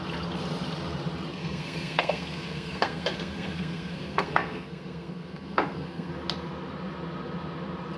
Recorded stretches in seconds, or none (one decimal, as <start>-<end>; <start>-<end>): 0.0-1.3; 6.1-8.0